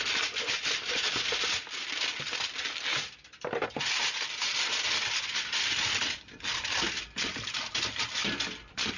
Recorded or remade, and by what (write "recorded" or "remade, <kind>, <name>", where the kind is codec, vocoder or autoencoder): recorded